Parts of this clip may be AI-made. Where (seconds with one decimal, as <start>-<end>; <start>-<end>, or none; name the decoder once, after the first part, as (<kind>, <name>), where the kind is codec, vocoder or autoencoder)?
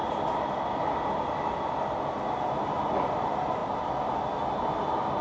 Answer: none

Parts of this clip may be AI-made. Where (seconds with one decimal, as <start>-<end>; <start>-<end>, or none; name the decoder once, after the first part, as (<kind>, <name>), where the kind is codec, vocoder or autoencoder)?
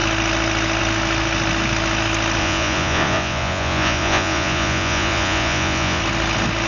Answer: 2.4-6.0 (vocoder, Vocos)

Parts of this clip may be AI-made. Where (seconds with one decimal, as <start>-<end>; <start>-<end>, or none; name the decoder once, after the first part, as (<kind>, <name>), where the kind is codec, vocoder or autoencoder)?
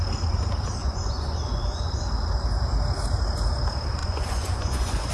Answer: 0.8-2.0 (vocoder, Vocos); 4.0-5.1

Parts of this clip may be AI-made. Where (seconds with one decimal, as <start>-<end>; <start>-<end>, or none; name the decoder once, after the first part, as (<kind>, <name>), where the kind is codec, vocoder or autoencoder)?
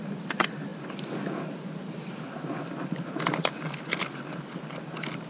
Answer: none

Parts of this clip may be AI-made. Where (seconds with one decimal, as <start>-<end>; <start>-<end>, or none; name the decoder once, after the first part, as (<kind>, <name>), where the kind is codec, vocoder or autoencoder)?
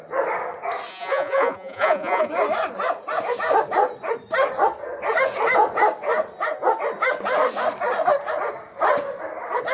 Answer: 0.9-2.3 (vocoder, Vocos)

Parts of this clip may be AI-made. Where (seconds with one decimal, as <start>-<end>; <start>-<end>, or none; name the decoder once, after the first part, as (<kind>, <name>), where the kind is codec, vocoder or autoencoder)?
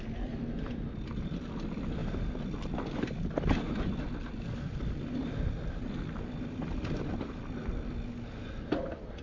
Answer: none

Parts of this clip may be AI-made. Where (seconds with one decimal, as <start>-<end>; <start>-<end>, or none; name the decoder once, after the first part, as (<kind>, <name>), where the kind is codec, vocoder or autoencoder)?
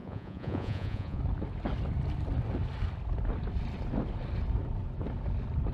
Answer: 0.0-1.2 (vocoder, Vocos)